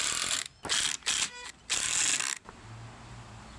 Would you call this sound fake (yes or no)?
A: no